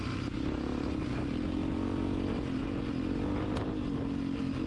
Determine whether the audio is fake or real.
real